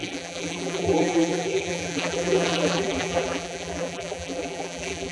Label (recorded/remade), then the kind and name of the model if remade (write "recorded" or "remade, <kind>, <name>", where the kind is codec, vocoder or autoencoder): remade, vocoder, BigVGAN v2